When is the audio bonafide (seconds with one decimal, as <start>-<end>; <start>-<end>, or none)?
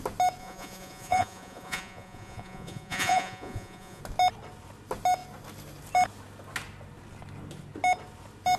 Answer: 0.0-0.4; 4.0-8.6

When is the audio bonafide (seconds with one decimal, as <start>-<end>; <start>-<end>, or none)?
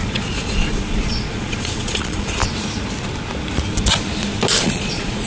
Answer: 2.4-4.6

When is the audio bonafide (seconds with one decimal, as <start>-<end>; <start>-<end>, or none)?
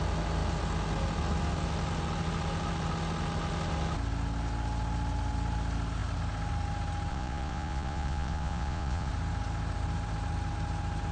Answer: 0.0-7.1; 9.1-11.1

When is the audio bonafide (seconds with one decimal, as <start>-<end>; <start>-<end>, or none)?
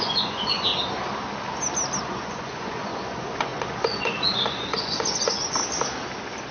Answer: 0.7-2.0; 5.6-6.5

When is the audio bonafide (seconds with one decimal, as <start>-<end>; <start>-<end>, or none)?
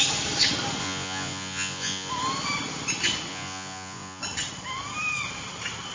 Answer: 0.0-0.8; 2.1-3.3; 4.2-5.9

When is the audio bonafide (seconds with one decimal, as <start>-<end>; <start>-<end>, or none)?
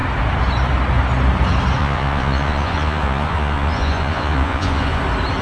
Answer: 0.0-1.8; 5.0-5.4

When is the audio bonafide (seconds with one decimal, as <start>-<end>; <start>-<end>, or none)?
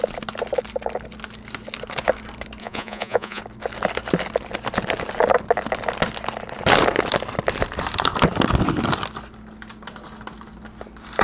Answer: 0.0-2.6; 3.4-11.2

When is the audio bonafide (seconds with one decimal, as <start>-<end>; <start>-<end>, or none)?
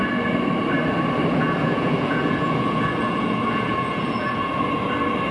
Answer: 0.0-1.3; 4.5-5.3